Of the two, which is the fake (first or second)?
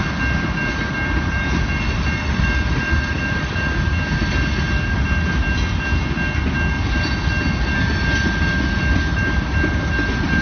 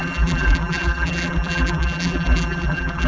second